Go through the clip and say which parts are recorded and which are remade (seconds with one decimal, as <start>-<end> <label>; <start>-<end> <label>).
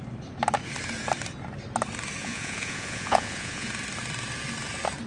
0.0-2.2 recorded; 2.2-3.7 remade; 3.7-5.1 recorded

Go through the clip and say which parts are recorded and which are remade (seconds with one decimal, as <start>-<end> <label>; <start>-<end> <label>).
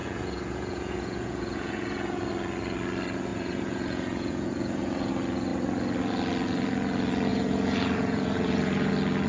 0.0-2.3 remade; 2.3-3.3 recorded; 3.3-5.1 remade; 5.1-7.3 recorded; 7.3-8.9 remade; 8.9-9.3 recorded